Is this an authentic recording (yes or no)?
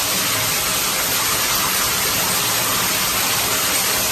yes